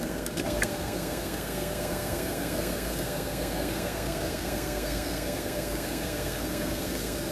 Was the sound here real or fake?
fake